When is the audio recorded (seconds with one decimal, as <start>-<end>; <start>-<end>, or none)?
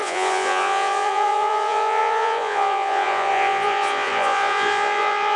none